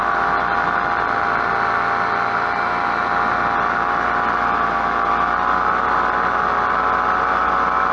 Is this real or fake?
real